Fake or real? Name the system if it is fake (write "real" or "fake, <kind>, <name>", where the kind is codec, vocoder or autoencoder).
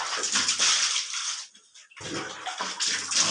real